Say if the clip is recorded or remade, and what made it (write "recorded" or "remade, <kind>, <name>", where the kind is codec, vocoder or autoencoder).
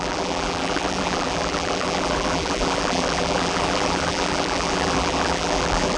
remade, vocoder, BigVGAN v2